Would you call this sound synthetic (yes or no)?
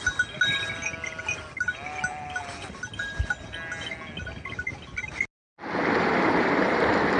no